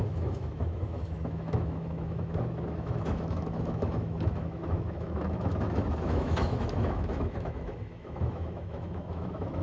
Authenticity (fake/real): fake